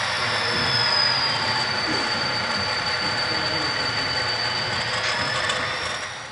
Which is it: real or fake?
real